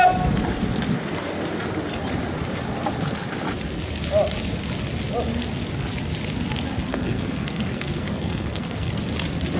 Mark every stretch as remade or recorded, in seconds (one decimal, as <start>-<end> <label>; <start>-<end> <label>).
0.0-6.9 recorded; 6.9-9.0 remade; 9.0-9.6 recorded